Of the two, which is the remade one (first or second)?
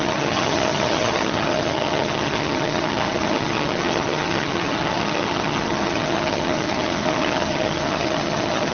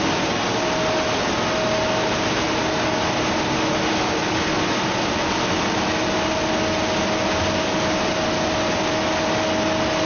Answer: first